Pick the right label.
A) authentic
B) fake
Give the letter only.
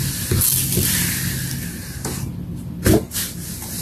A